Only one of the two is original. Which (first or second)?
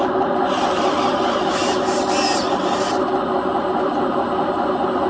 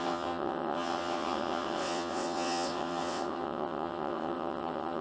first